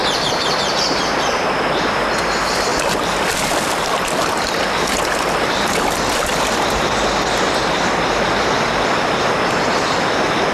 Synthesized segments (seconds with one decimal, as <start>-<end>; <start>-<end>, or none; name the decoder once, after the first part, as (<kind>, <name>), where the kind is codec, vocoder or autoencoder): none